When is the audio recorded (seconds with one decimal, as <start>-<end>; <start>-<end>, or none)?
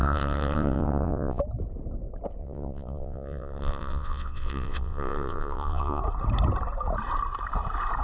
1.4-2.4; 6.0-8.0